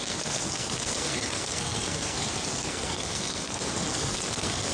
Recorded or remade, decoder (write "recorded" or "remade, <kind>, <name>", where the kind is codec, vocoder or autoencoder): remade, codec, SNAC